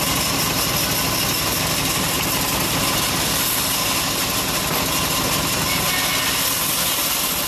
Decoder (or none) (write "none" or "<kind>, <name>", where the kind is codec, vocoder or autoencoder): none